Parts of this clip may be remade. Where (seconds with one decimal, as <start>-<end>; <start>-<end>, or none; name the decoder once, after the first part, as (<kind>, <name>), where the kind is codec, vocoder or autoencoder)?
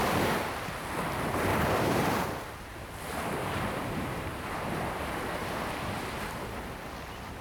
1.5-5.9 (vocoder, BigVGAN v2)